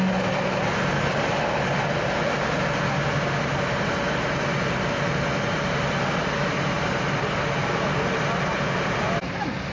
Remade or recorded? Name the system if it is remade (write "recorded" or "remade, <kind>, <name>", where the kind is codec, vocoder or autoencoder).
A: recorded